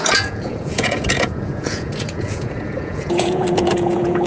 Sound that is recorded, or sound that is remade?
remade